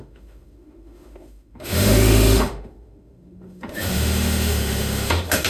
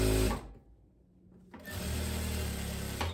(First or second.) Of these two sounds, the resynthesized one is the first